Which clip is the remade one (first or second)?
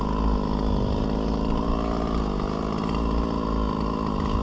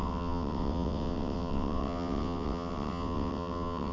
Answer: second